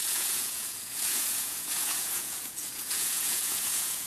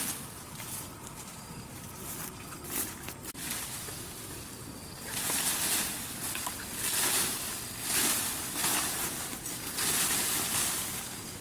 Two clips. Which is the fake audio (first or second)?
first